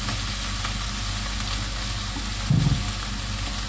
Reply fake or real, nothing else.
real